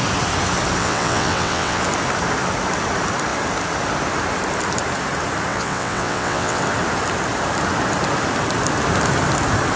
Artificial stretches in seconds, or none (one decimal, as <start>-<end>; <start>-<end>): 0.8-1.8; 5.5-6.6